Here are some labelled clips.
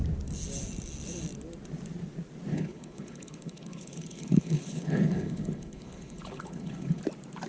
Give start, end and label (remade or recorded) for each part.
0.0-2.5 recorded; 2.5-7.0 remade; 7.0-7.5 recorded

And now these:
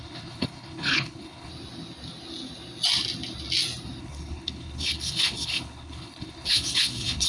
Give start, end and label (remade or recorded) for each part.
0.0-1.5 remade; 1.5-4.0 recorded; 4.0-7.3 remade

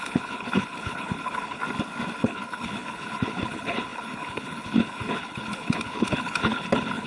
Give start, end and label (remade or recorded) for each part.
0.0-1.6 remade; 1.6-2.2 recorded; 2.2-7.1 remade

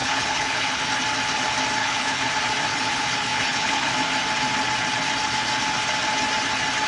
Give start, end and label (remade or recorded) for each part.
0.0-0.8 remade; 0.8-1.8 recorded; 1.8-2.3 remade; 2.3-2.7 recorded; 2.7-3.9 remade; 3.9-6.9 recorded

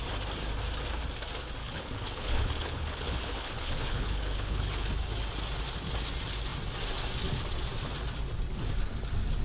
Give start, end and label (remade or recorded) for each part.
0.0-1.6 recorded; 1.6-4.9 remade; 4.9-9.4 recorded